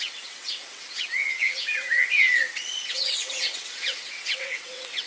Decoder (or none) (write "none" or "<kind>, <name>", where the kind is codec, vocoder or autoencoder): vocoder, WaveNeXt